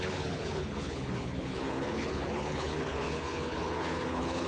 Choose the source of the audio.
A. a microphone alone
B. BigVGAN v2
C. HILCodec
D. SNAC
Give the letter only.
C